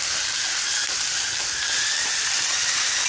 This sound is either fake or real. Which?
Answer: real